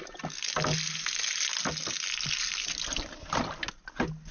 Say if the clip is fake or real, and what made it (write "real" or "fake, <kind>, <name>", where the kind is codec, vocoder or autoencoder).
real